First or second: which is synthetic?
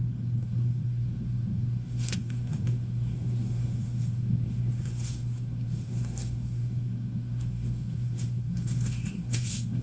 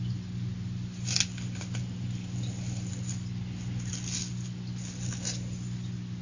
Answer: first